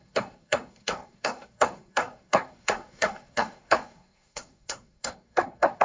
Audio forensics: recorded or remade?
remade